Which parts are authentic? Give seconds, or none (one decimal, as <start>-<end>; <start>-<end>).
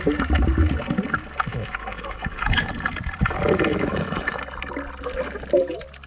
0.0-1.5; 2.7-3.7; 4.4-6.1